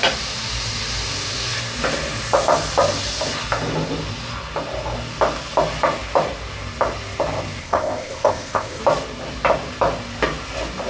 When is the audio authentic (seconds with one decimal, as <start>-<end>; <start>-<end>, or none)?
0.0-7.6; 8.8-10.9